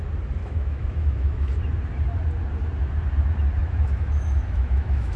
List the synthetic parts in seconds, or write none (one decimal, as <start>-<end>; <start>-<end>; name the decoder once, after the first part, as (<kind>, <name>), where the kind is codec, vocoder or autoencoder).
0.4-1.6 (autoencoder, DAC-VAE); 3.6-5.2